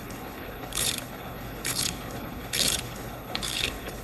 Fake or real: fake